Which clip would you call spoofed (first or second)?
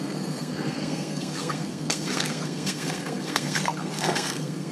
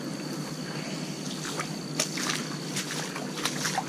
first